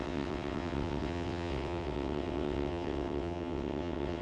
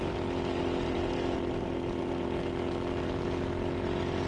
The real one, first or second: second